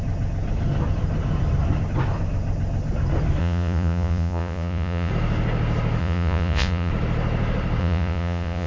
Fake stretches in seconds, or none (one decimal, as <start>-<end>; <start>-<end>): 3.4-5.1; 6.0-6.9; 7.8-8.7